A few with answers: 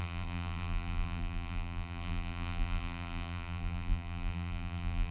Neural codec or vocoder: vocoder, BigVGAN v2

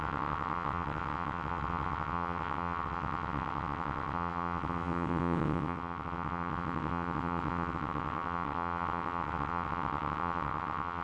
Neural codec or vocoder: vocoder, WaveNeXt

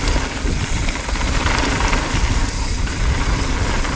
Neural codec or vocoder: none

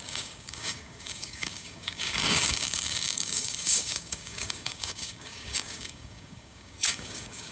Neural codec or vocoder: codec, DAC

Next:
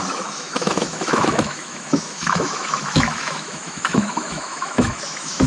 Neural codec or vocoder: autoencoder, DAC-VAE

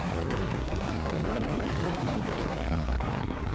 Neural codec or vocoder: codec, SNAC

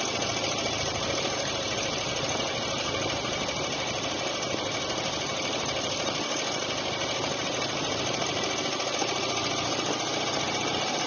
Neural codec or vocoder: none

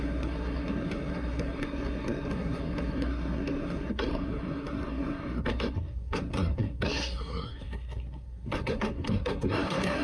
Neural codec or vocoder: codec, SNAC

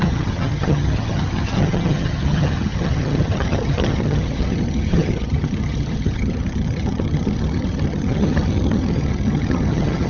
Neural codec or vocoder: vocoder, HiFi-GAN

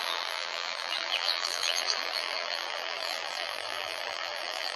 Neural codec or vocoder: vocoder, BigVGAN v2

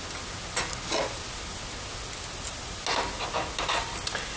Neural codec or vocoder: none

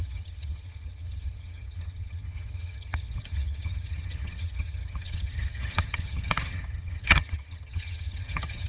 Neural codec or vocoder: vocoder, HiFi-GAN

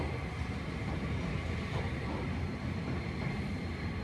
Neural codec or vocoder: vocoder, BigVGAN v2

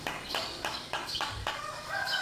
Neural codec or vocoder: codec, DAC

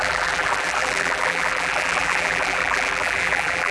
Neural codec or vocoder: vocoder, BigVGAN v2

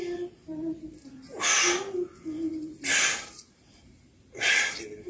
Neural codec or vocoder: none